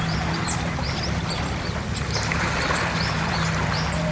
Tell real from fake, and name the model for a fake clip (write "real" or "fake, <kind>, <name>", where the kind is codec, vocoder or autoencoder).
real